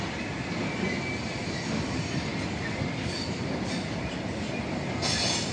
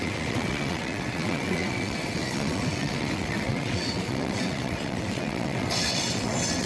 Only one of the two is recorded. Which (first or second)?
first